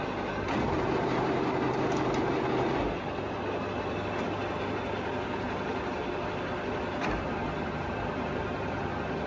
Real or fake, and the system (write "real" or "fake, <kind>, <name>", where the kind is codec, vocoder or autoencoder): real